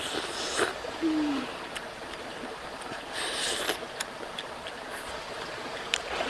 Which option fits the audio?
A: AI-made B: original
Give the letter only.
A